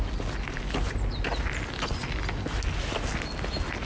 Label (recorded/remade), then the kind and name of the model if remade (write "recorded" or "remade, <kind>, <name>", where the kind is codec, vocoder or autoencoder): recorded